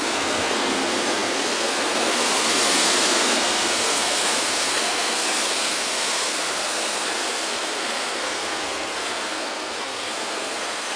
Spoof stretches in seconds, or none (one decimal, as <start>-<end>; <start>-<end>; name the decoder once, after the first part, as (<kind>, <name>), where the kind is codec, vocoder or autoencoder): 0.0-11.0 (codec, SNAC)